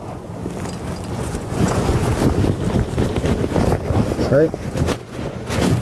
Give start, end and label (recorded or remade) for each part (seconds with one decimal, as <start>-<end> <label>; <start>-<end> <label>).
0.0-0.4 remade; 0.4-1.1 recorded; 1.1-2.1 remade; 2.1-4.1 recorded; 4.1-5.8 remade